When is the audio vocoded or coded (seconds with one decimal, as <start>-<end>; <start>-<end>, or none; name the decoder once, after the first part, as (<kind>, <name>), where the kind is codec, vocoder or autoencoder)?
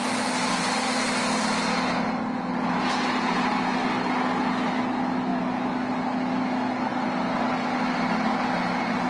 none